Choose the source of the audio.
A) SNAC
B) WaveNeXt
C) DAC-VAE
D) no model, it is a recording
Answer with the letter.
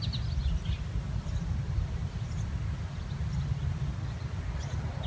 D